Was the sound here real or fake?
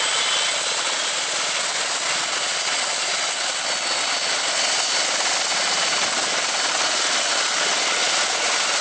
real